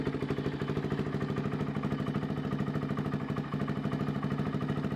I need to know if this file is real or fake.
real